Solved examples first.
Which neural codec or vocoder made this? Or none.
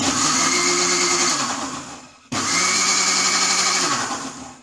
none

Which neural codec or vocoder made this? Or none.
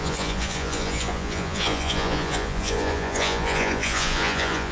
vocoder, Vocos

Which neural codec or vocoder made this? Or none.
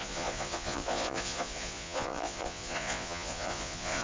vocoder, Vocos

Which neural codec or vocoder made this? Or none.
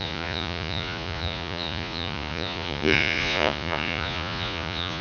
vocoder, Vocos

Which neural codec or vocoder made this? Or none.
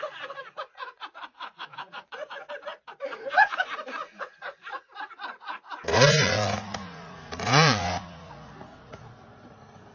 vocoder, Vocos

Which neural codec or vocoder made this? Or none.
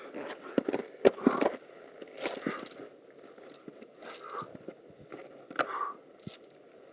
none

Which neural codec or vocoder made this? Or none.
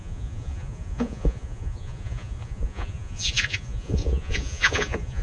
vocoder, Vocos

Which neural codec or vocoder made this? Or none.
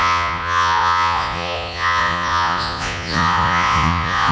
vocoder, Vocos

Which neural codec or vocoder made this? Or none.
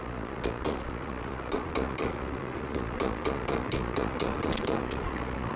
vocoder, Vocos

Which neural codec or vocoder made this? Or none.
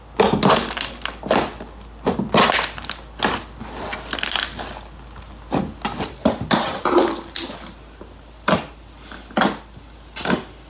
none